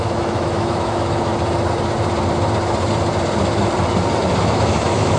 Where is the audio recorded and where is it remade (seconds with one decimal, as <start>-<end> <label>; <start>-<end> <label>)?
0.0-1.3 remade; 1.3-4.4 recorded; 4.4-5.2 remade